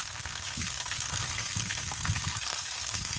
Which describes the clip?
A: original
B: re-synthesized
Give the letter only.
B